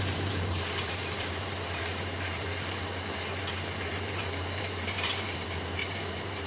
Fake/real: fake